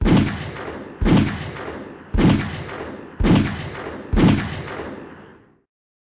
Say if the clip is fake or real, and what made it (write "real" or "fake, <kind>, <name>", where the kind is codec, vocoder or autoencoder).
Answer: real